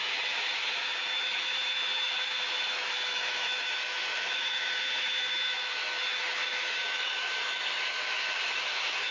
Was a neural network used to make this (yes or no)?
yes